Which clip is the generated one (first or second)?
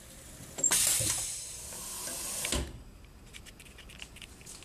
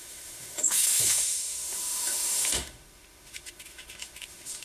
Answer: second